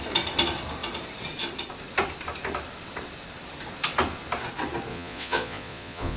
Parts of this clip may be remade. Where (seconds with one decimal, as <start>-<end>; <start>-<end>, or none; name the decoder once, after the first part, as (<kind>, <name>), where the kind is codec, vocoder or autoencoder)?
4.9-6.2 (vocoder, Vocos)